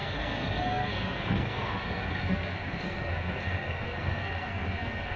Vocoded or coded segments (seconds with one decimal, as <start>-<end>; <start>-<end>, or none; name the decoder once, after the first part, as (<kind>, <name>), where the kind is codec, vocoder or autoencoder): 0.0-5.2 (codec, SNAC)